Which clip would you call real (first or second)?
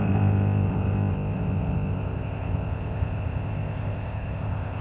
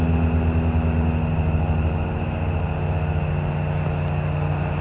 second